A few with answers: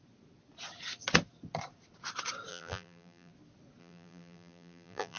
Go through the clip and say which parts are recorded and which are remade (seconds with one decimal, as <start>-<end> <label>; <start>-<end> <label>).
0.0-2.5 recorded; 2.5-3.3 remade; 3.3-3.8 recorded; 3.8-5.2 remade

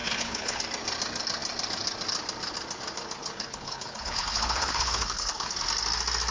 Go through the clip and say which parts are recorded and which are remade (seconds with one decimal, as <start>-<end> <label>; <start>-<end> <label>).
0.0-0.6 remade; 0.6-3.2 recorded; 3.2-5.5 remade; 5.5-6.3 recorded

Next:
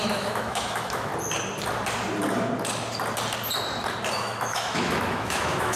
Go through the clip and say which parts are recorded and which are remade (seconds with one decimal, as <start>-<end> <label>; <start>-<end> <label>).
0.0-1.1 remade; 1.1-4.1 recorded; 4.1-5.8 remade

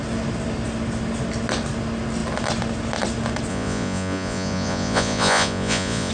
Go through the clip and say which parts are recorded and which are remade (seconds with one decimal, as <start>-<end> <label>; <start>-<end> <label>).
0.0-3.5 recorded; 3.5-6.1 remade

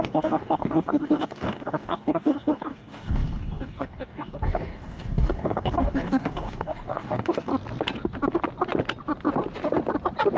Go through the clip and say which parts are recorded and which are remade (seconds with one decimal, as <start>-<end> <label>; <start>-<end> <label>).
0.0-7.5 remade; 7.5-10.4 recorded

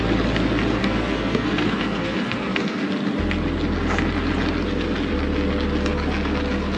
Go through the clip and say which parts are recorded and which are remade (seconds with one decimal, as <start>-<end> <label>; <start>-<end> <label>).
0.0-0.8 recorded; 0.8-2.8 remade; 2.8-6.8 recorded

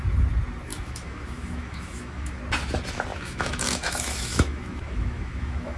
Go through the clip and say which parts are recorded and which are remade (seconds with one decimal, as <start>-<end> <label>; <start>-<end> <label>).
0.0-0.7 recorded; 0.7-2.4 remade; 2.4-3.1 recorded; 3.1-5.8 remade

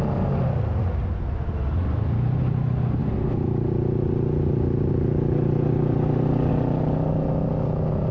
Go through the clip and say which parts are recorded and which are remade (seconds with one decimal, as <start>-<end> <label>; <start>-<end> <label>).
0.0-8.1 recorded